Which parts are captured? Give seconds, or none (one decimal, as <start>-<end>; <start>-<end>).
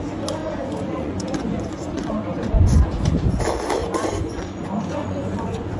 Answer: 0.0-0.4; 3.4-3.8